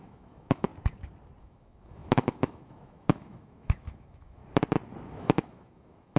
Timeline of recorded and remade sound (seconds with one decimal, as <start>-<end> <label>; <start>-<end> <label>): 0.0-0.7 remade; 0.7-1.4 recorded; 1.4-4.4 remade; 4.4-5.2 recorded; 5.2-6.2 remade